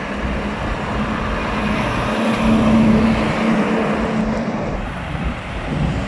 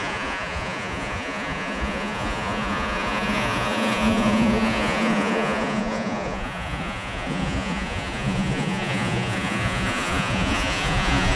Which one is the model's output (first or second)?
second